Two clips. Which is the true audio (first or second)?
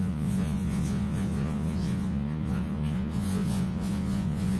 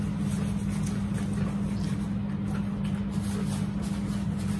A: second